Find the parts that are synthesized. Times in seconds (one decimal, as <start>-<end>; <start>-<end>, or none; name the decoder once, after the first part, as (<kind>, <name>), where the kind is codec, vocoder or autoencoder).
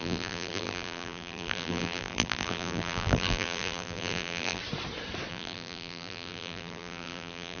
0.0-4.6 (vocoder, BigVGAN v2); 5.3-7.6